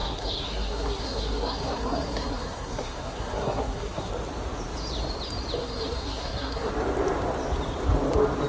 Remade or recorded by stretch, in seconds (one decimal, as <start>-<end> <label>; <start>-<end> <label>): 0.0-4.1 remade; 4.1-5.6 recorded; 5.6-6.7 remade; 6.7-8.5 recorded